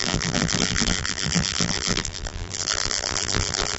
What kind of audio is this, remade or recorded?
remade